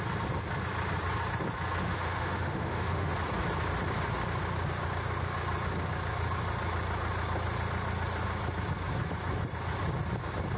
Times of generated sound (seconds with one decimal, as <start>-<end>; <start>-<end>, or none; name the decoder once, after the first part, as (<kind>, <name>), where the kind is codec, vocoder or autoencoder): 1.8-3.1 (autoencoder, DAC-VAE)